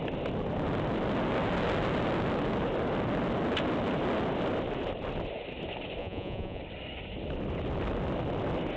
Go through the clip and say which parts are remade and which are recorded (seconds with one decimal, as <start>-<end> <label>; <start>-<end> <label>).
0.0-6.0 recorded; 6.0-6.6 remade; 6.6-8.8 recorded